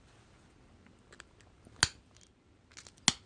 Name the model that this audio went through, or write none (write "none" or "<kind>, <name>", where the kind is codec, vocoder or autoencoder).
none